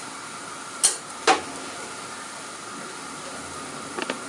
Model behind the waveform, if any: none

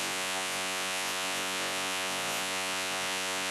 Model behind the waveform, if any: vocoder, Vocos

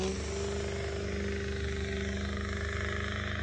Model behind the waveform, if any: none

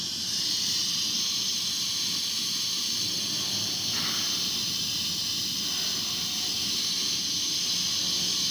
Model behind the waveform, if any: none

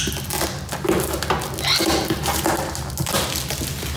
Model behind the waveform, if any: none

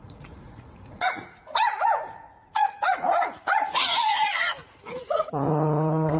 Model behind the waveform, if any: vocoder, Vocos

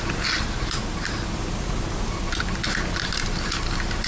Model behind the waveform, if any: none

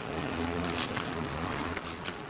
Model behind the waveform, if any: vocoder, Vocos